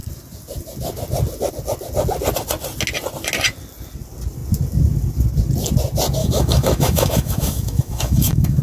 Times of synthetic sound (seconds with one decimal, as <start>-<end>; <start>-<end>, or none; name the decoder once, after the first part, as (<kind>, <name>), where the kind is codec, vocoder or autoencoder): 6.2-8.6 (autoencoder, DAC-VAE)